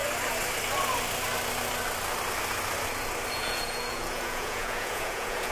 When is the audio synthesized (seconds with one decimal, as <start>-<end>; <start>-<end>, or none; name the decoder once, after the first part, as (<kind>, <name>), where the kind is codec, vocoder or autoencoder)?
3.3-5.5 (vocoder, Vocos)

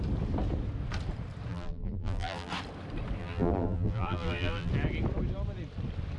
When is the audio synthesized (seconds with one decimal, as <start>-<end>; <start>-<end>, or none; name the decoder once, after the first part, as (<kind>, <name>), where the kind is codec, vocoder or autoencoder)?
1.5-2.5 (vocoder, BigVGAN v2); 3.2-4.7